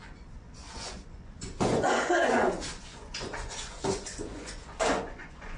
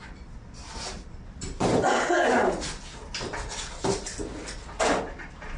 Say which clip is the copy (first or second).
first